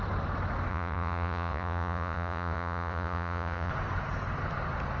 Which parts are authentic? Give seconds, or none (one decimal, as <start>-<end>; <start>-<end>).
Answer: 0.0-0.7; 3.7-5.0